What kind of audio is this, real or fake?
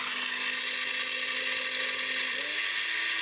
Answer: real